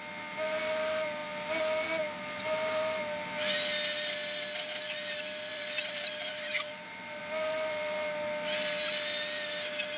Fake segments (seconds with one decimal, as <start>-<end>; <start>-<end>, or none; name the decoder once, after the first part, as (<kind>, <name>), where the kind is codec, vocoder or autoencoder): 5.5-7.2 (vocoder, BigVGAN v2)

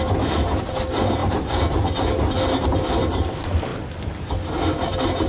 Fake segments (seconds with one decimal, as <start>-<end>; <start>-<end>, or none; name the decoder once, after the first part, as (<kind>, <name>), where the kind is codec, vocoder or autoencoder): 1.2-2.2 (vocoder, BigVGAN v2)